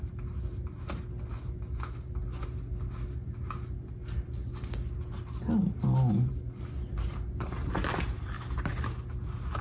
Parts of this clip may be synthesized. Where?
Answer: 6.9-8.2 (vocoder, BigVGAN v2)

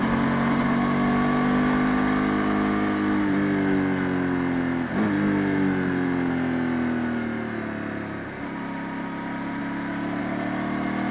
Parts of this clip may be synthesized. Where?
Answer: none

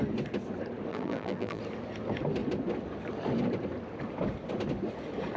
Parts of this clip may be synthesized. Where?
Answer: 0.9-1.6 (vocoder, BigVGAN v2)

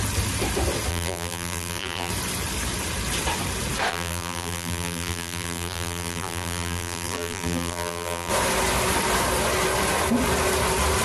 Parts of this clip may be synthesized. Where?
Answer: 0.9-2.1 (vocoder, BigVGAN v2); 3.9-8.3

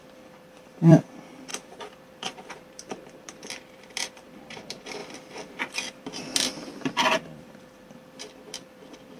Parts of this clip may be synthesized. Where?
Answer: 0.0-9.2 (vocoder, BigVGAN v2)

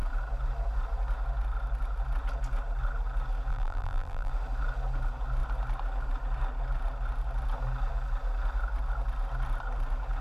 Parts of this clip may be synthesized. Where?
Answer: 3.5-4.3 (vocoder, BigVGAN v2)

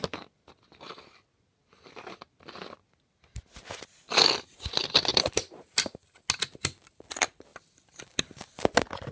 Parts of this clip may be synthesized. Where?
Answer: 5.1-6.1 (vocoder, BigVGAN v2)

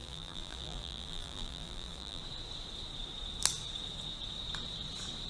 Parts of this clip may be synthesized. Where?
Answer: 0.0-2.2 (vocoder, BigVGAN v2)